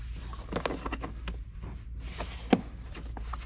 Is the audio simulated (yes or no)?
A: no